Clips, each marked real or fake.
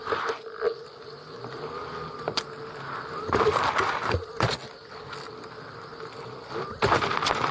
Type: real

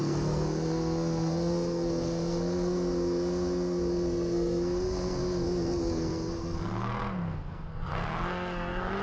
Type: fake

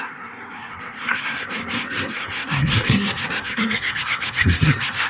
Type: fake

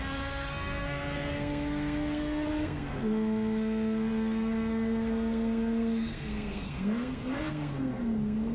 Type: fake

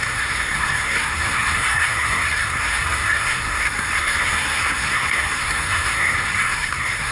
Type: fake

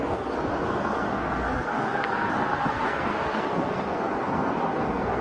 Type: fake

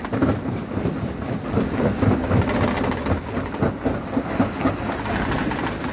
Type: real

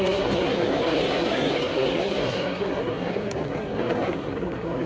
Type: fake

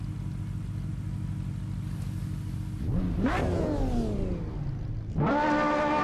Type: real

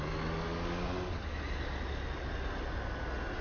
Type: real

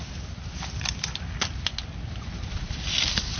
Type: real